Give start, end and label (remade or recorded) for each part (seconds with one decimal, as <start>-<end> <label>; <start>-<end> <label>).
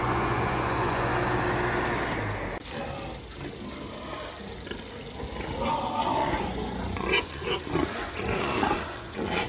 0.0-1.1 remade; 1.1-6.1 recorded; 6.1-9.5 remade